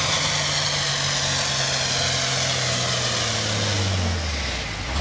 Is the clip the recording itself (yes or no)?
yes